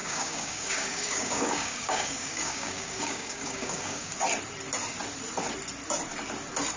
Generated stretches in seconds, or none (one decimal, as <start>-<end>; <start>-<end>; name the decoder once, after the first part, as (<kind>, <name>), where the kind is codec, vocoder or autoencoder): 0.0-4.1 (codec, DAC)